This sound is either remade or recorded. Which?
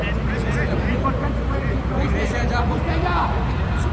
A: recorded